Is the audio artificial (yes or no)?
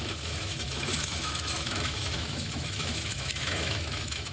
yes